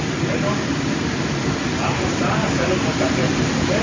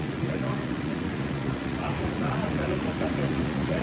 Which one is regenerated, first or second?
second